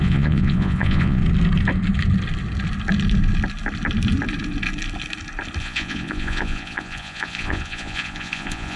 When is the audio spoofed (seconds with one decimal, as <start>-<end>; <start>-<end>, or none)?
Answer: 0.0-1.2; 5.6-8.8